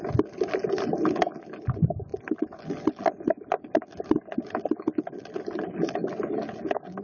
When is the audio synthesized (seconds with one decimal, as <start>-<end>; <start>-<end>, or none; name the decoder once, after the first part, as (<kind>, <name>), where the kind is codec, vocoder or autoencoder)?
none